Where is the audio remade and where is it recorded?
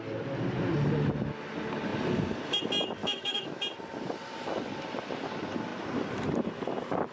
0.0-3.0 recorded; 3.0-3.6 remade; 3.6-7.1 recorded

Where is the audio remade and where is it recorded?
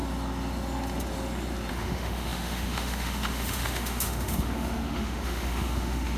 0.0-1.7 recorded; 1.7-6.2 remade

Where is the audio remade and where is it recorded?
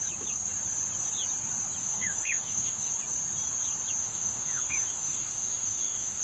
0.0-1.8 recorded; 1.8-2.9 remade; 2.9-4.0 recorded; 4.0-6.2 remade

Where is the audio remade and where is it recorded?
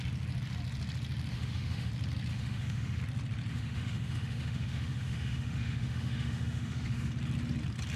0.0-1.3 recorded; 1.3-1.9 remade; 1.9-2.3 recorded; 2.3-3.0 remade; 3.0-3.5 recorded; 3.5-7.1 remade; 7.1-8.0 recorded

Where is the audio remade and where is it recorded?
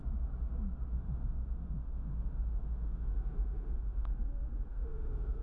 0.0-0.9 recorded; 0.9-4.1 remade; 4.1-4.7 recorded; 4.7-5.4 remade